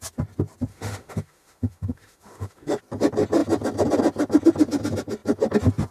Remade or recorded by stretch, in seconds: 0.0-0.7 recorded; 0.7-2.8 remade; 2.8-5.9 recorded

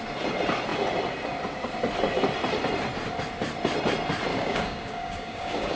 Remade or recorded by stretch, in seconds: 0.0-4.3 recorded; 4.3-5.8 remade

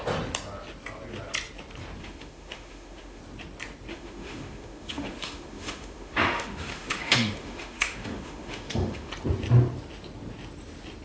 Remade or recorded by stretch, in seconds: 0.0-2.0 recorded; 2.0-3.2 remade; 3.2-3.9 recorded; 3.9-9.1 remade; 9.1-11.0 recorded

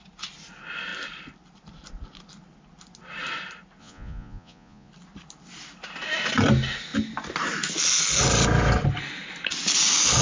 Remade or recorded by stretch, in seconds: 0.0-3.8 recorded; 3.8-4.9 remade; 4.9-10.2 recorded